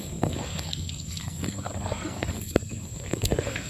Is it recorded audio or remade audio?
remade